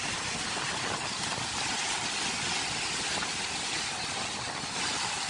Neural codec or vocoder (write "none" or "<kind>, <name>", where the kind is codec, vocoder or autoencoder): none